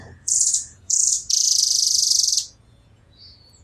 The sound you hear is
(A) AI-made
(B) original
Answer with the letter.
A